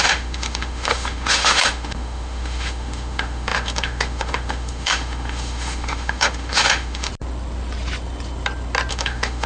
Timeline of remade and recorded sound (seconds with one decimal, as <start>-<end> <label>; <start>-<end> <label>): 0.0-7.1 remade; 7.1-8.9 recorded; 8.9-9.5 remade